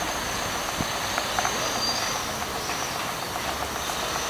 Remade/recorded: recorded